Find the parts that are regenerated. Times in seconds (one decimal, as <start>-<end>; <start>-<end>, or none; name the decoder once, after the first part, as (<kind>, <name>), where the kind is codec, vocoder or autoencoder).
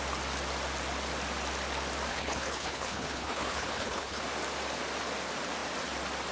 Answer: 2.1-4.2 (codec, HILCodec)